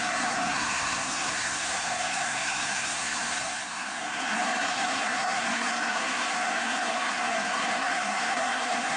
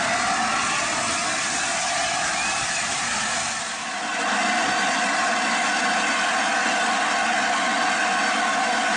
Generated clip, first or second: first